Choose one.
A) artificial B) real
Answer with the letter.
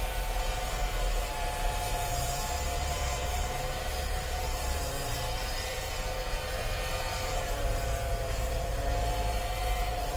A